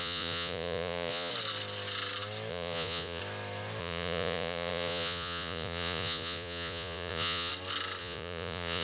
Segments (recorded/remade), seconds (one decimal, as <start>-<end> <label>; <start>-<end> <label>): 0.0-1.3 remade; 1.3-2.5 recorded; 2.5-3.2 remade; 3.2-3.8 recorded; 3.8-7.5 remade; 7.5-8.0 recorded; 8.0-8.8 remade